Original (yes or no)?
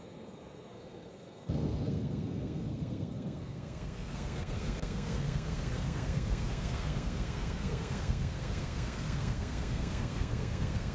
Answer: no